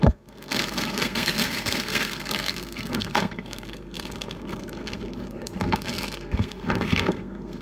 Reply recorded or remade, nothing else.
remade